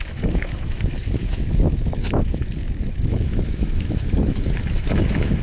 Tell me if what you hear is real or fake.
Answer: fake